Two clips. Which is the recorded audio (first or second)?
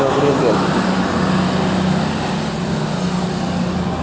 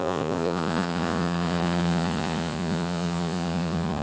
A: first